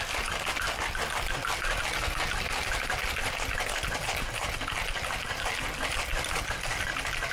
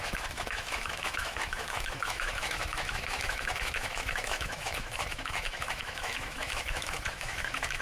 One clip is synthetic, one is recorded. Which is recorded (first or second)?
first